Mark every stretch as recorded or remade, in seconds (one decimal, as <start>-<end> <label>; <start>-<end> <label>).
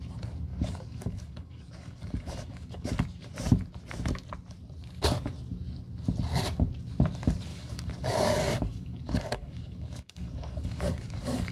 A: 0.0-0.5 recorded; 0.5-2.9 remade; 2.9-7.5 recorded; 7.5-11.5 remade